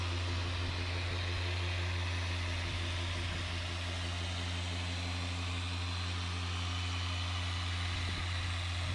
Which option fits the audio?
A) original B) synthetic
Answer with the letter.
A